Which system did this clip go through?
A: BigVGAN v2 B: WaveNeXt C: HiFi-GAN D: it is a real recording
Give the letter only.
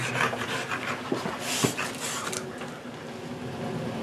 D